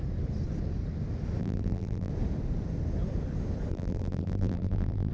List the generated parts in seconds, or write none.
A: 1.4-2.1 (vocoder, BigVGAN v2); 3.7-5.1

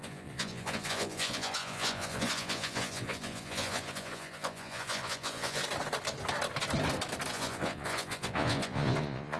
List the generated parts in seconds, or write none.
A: 0.0-5.6 (vocoder, Vocos); 7.3-9.4

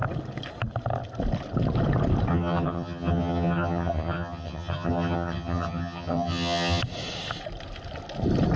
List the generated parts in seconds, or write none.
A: 2.3-6.8 (vocoder, HiFi-GAN)

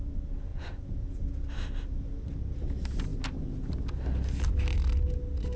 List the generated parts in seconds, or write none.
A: 0.5-1.2 (vocoder, Vocos)

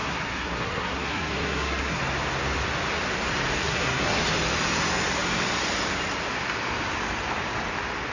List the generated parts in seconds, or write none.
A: 0.0-2.0 (codec, SNAC); 3.6-4.2

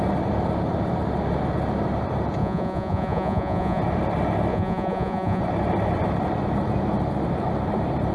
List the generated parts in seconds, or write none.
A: 2.4-3.8 (vocoder, Vocos); 4.5-5.4